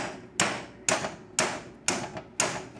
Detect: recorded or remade recorded